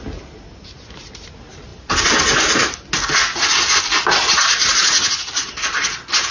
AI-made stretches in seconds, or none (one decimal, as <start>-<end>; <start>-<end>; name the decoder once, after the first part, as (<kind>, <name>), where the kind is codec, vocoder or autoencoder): none